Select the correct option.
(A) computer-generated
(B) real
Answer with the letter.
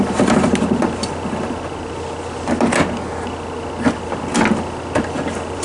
B